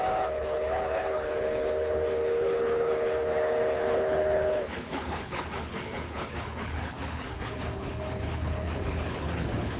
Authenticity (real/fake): fake